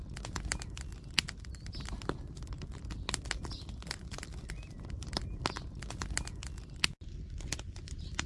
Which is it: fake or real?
real